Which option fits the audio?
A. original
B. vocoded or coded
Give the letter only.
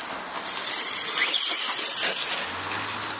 A